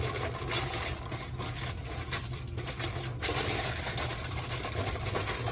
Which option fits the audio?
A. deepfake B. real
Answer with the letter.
B